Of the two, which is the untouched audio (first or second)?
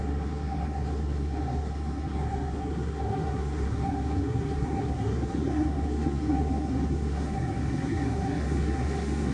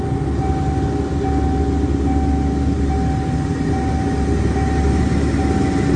second